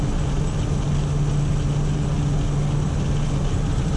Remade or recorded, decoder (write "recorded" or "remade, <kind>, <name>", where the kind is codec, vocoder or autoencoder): recorded